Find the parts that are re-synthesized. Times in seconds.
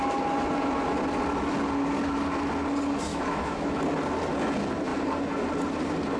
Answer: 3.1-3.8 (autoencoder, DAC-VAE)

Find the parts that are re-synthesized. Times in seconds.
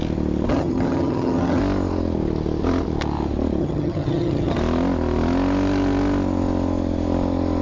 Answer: 0.5-1.6 (vocoder, HiFi-GAN); 3.6-4.6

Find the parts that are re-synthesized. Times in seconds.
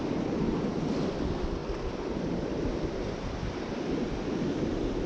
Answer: 0.0-5.1 (vocoder, BigVGAN v2)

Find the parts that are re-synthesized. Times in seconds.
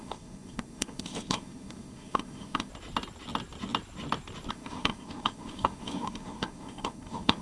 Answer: 0.0-2.7 (codec, SNAC); 4.5-7.4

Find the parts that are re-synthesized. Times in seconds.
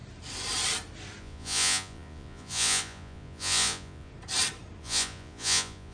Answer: 1.2-4.1 (vocoder, Vocos); 4.8-5.9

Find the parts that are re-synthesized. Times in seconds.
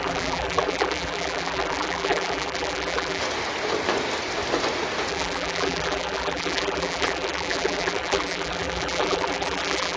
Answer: 0.0-3.2 (vocoder, BigVGAN v2); 5.1-10.0